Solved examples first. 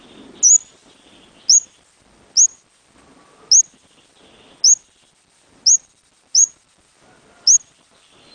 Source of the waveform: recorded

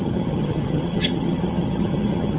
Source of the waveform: remade